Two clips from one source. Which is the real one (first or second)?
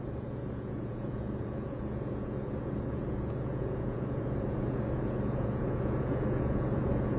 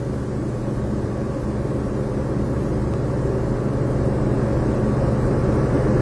second